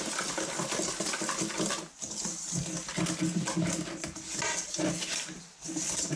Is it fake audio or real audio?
real